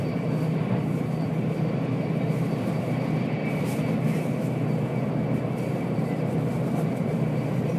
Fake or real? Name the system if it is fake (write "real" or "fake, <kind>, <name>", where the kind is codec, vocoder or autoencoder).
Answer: fake, vocoder, BigVGAN v2